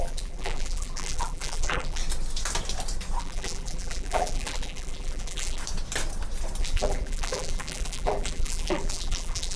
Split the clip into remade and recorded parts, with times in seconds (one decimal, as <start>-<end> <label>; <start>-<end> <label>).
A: 0.0-2.0 remade; 2.0-3.2 recorded; 3.2-5.6 remade; 5.6-6.6 recorded; 6.6-9.6 remade